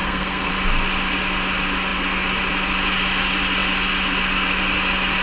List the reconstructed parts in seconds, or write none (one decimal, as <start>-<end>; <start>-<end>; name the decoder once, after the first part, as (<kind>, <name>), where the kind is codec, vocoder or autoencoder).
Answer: 0.0-0.5 (codec, SNAC)